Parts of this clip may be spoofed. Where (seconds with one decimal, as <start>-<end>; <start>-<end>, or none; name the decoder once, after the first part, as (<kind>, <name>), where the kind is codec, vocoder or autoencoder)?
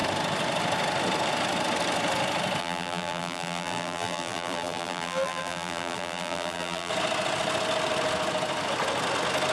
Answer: 2.6-6.9 (vocoder, BigVGAN v2)